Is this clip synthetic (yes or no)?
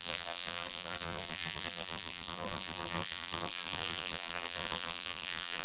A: yes